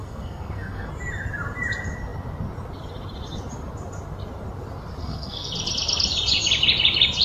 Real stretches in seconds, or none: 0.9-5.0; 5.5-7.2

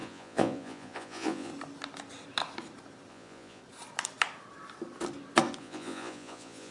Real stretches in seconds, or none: 1.5-3.1; 3.6-5.6